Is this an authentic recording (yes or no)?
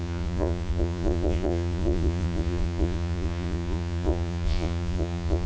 no